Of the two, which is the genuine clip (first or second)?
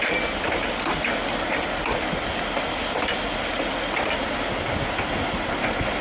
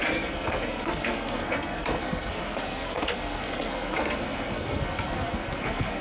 first